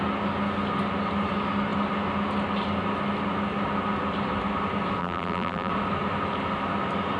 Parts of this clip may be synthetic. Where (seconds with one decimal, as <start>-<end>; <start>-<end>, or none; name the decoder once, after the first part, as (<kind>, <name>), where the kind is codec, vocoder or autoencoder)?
5.0-5.7 (vocoder, BigVGAN v2)